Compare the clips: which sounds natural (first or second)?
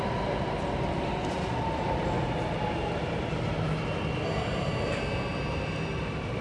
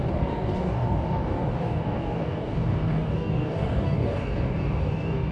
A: first